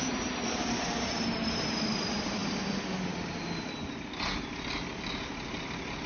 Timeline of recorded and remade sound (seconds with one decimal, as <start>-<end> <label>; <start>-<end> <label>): 0.0-2.4 remade; 2.4-6.1 recorded

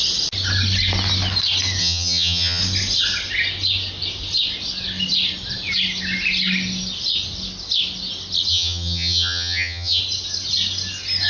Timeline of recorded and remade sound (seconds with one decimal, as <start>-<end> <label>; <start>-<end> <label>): 0.0-1.8 recorded; 1.8-2.6 remade; 2.6-8.5 recorded; 8.5-10.0 remade; 10.0-11.3 recorded

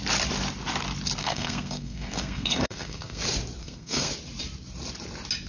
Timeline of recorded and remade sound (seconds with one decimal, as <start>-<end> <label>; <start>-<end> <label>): 0.0-1.2 recorded; 1.2-3.2 remade; 3.2-3.6 recorded; 3.6-4.1 remade; 4.1-5.5 recorded

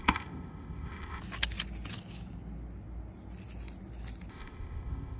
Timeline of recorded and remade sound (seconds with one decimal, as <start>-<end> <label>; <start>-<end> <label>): 0.0-1.2 remade; 1.2-4.3 recorded; 4.3-5.2 remade

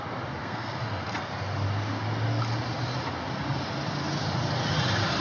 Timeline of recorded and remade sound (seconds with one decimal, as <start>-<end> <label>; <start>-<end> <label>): 0.0-0.4 recorded; 0.4-1.3 remade; 1.3-5.2 recorded